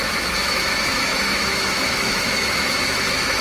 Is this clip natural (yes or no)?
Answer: no